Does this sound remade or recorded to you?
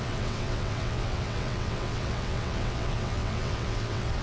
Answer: remade